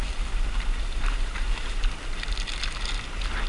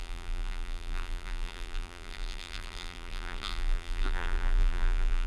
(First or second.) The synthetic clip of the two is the second